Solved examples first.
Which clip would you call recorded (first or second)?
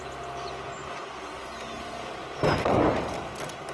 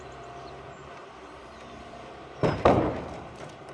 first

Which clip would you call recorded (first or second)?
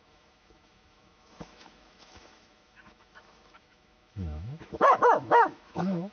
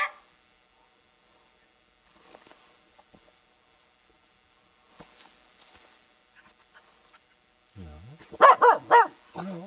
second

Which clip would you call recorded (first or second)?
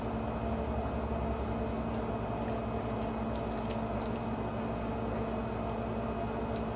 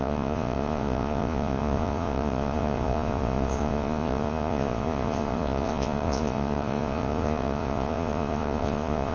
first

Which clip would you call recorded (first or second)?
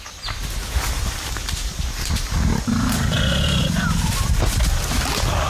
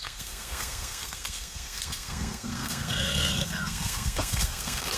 first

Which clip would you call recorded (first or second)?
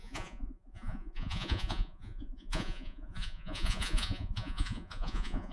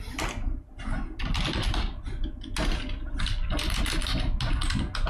second